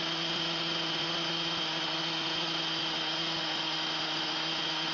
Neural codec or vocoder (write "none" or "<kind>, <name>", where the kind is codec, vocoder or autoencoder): none